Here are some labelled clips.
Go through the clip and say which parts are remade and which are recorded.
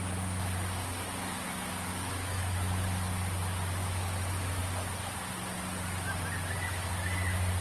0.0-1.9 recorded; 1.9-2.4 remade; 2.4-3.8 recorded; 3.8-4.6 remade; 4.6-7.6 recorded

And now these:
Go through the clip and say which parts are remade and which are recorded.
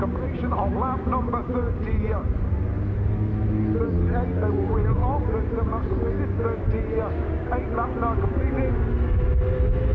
0.0-9.9 recorded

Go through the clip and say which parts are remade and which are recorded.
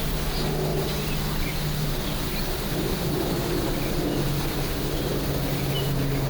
0.0-6.3 recorded